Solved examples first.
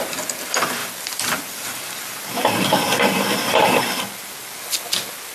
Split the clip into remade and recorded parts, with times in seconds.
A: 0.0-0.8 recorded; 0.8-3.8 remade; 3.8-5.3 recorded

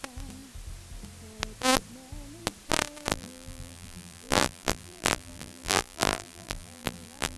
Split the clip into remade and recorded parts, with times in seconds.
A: 0.0-3.1 recorded; 3.1-7.4 remade

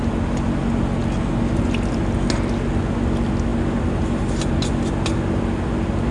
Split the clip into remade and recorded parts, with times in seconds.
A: 0.0-6.1 recorded

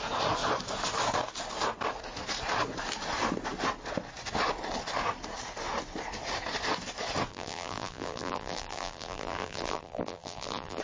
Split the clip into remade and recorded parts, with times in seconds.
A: 0.0-7.3 recorded; 7.3-10.8 remade